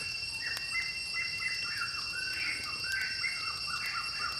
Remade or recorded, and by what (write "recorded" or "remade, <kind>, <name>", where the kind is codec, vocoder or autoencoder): recorded